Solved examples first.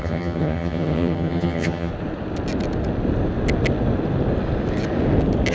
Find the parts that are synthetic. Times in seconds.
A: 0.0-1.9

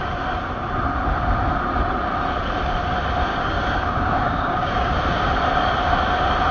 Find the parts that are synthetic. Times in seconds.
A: 3.3-4.9

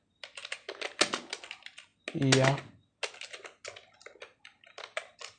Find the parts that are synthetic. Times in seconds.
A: none

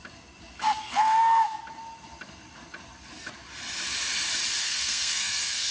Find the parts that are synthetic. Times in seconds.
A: 0.9-1.5; 4.6-5.7

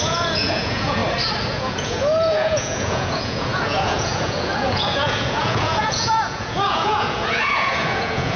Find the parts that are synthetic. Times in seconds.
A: 0.0-1.0; 1.5-8.4

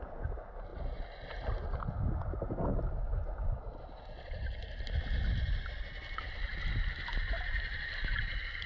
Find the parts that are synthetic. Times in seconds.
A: none

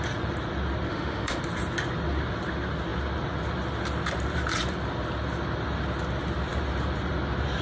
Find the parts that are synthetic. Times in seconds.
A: 0.9-1.4